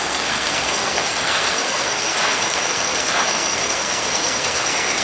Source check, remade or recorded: remade